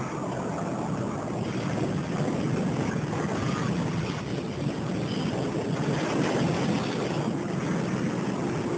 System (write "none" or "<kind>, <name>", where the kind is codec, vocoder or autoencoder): none